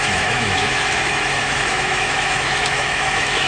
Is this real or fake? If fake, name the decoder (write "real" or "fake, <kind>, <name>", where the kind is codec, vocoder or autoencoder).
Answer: fake, autoencoder, DAC-VAE